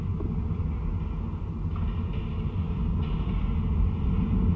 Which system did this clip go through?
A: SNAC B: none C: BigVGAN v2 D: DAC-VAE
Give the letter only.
B